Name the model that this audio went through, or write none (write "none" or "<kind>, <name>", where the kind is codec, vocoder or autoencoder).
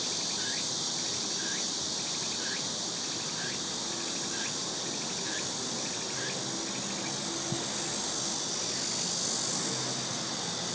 none